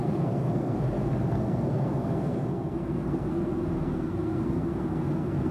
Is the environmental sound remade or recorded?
remade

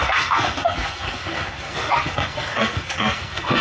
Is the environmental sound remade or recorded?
remade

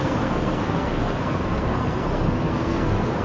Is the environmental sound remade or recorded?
remade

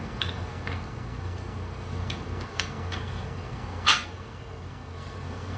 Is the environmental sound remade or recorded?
remade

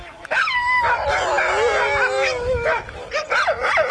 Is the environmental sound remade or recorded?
recorded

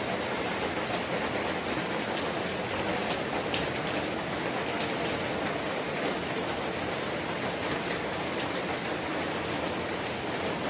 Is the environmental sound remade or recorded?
recorded